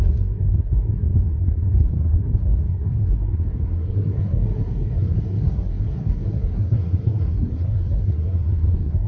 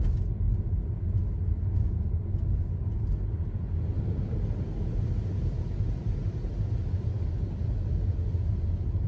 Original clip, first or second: second